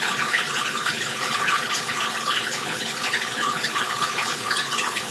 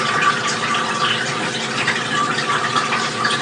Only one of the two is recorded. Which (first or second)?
second